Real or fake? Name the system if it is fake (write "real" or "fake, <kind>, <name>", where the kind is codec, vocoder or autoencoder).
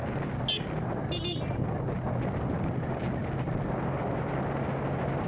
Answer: real